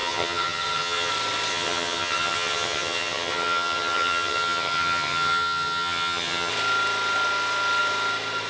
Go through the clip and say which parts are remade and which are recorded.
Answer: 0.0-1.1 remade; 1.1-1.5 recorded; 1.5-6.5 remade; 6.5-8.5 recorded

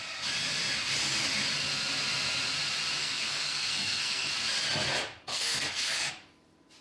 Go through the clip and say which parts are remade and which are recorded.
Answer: 0.0-3.0 recorded; 3.0-4.3 remade; 4.3-5.3 recorded; 5.3-6.1 remade; 6.1-6.8 recorded

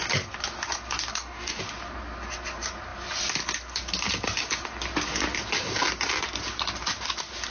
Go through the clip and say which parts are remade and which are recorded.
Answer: 0.0-1.1 recorded; 1.1-1.6 remade; 1.6-7.5 recorded

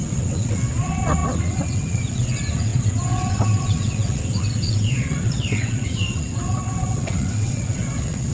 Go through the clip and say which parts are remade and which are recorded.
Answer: 0.0-8.3 remade